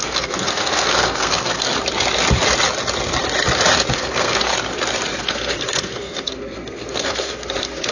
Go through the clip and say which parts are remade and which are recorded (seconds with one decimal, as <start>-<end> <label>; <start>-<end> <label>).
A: 0.0-1.7 remade; 1.7-3.9 recorded; 3.9-4.5 remade; 4.5-5.2 recorded; 5.2-7.9 remade